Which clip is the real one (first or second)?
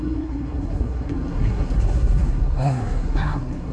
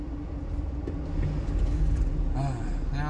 second